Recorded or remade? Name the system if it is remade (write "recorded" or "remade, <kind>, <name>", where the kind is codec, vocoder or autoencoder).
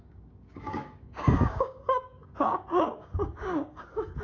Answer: remade, codec, DAC